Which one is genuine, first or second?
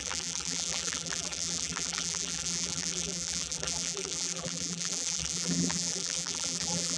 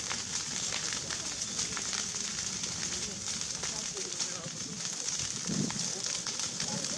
second